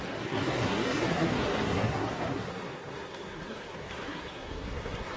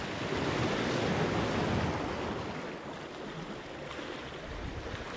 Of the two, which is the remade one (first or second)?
first